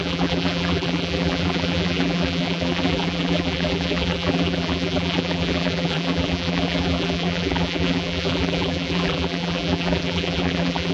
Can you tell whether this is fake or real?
fake